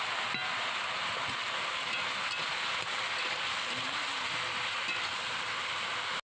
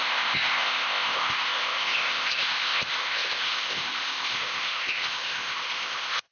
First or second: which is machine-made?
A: second